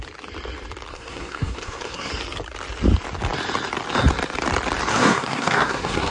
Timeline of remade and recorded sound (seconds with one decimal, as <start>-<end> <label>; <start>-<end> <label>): 0.0-0.9 recorded; 0.9-2.1 remade; 2.1-4.9 recorded; 4.9-6.1 remade